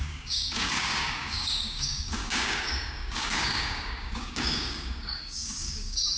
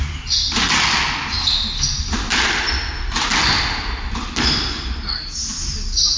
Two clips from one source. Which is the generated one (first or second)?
first